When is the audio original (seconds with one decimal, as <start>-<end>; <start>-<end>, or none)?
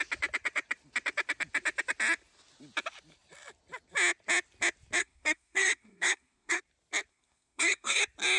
0.0-5.0; 6.6-7.1; 8.0-8.4